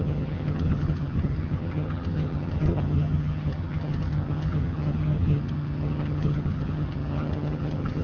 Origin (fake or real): fake